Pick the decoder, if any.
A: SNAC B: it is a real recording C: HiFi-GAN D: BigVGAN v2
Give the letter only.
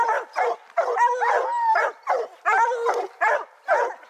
B